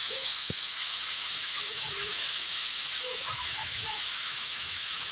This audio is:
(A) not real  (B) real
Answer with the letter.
A